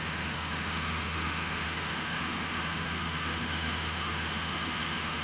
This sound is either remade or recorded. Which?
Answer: remade